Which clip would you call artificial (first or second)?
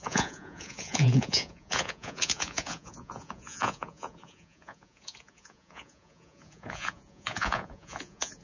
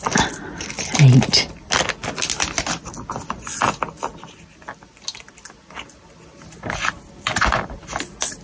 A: first